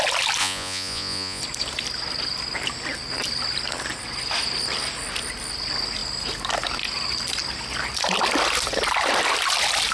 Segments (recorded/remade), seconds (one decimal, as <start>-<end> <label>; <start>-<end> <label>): 0.0-0.4 recorded; 0.4-1.4 remade; 1.4-9.9 recorded